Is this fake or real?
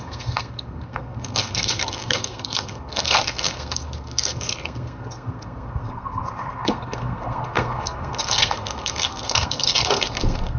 fake